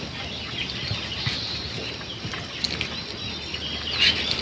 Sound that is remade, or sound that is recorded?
recorded